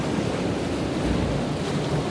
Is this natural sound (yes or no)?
yes